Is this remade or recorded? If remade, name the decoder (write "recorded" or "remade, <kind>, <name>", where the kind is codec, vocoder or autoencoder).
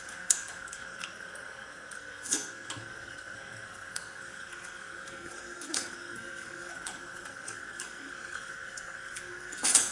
remade, codec, SNAC